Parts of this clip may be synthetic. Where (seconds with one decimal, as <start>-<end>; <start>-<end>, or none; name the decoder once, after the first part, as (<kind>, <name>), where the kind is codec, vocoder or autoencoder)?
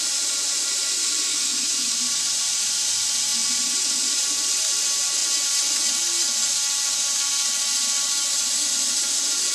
1.3-2.0 (autoencoder, DAC-VAE)